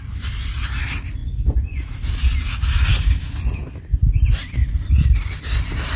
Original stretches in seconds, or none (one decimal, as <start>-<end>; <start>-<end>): 0.0-1.2; 1.9-6.0